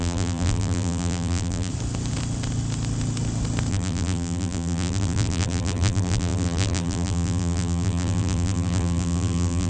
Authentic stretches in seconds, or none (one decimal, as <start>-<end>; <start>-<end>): 1.7-3.7